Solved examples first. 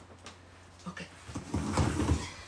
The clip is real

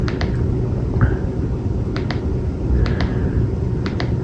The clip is real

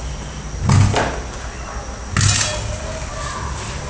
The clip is real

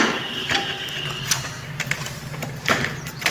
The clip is fake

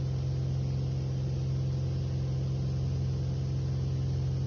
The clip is real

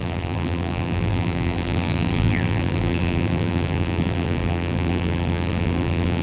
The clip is fake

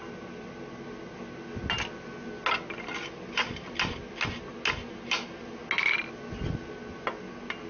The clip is real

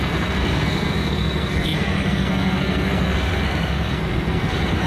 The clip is fake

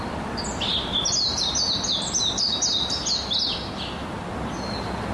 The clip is real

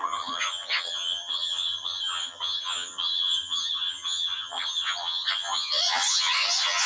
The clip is fake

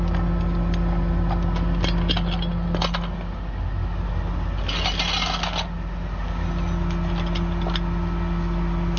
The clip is real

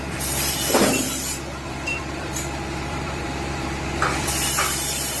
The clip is fake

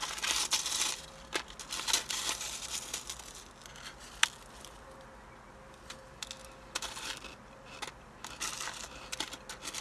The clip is real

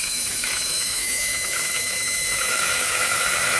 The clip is fake